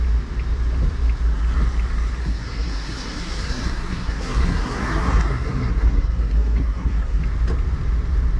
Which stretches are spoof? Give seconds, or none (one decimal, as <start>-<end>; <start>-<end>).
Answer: 2.2-7.2